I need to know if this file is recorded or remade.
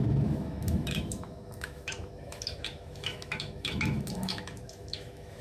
remade